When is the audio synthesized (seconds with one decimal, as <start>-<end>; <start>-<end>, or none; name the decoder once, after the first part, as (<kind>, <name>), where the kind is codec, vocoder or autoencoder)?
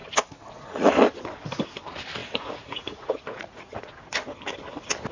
0.0-0.9 (vocoder, Vocos); 2.2-3.7